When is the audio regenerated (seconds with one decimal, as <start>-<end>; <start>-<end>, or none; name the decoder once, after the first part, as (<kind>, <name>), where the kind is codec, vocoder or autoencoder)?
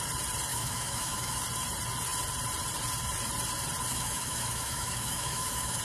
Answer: 0.5-1.4 (autoencoder, DAC-VAE); 3.9-5.8